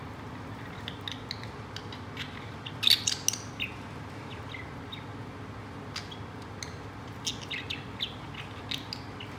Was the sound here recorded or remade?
recorded